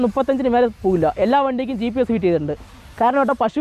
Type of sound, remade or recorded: recorded